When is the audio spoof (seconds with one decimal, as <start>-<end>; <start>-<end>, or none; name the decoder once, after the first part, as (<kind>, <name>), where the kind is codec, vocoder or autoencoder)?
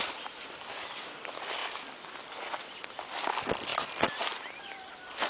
none